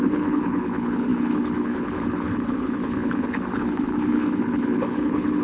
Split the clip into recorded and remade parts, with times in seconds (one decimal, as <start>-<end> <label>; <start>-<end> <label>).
0.0-5.4 remade